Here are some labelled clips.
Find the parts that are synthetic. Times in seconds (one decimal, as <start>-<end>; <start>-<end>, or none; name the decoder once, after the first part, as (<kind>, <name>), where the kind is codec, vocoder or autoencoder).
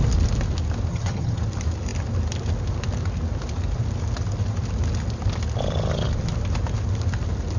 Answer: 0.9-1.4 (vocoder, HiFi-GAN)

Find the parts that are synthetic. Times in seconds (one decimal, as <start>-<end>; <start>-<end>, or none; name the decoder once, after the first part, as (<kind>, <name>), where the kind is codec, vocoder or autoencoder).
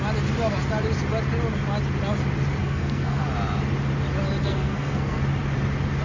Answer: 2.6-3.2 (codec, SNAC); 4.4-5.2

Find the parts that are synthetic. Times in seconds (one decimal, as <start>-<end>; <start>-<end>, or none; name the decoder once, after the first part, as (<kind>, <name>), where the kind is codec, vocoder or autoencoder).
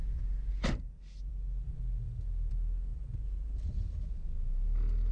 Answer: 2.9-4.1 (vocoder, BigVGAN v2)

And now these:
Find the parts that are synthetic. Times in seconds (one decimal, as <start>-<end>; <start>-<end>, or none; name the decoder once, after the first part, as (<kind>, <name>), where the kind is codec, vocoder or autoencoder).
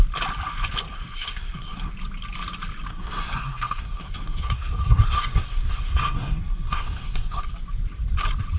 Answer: 0.9-1.9 (codec, SNAC); 2.9-7.5